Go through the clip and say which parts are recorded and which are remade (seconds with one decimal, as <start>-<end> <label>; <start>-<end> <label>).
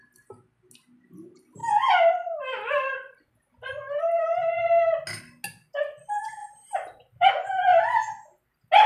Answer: 0.0-1.6 recorded; 1.6-4.0 remade; 4.0-6.4 recorded; 6.4-7.3 remade; 7.3-8.9 recorded